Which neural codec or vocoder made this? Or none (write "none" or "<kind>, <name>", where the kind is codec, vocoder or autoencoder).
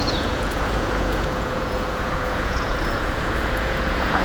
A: vocoder, Vocos